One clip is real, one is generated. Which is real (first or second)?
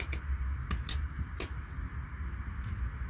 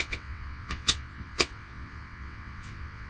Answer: first